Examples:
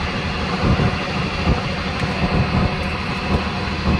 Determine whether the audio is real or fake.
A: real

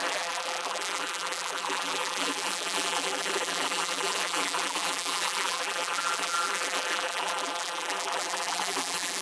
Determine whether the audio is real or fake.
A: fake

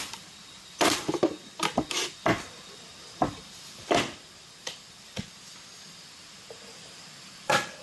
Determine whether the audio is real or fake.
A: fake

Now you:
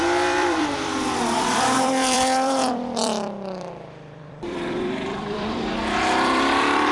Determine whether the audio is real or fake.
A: fake